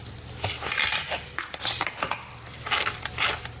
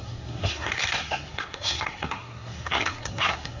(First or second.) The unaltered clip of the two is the first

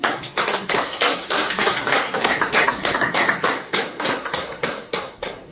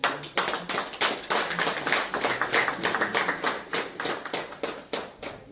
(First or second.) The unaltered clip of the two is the second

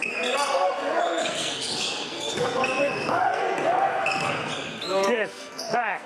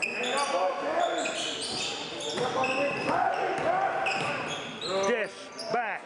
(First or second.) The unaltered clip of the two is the second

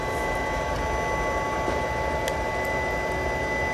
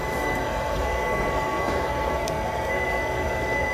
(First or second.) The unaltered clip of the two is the first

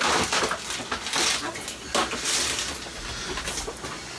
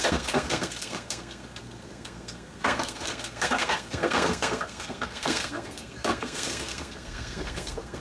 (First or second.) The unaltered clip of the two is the first